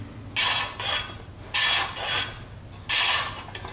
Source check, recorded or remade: recorded